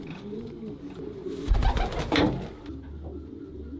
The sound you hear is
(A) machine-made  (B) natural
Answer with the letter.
B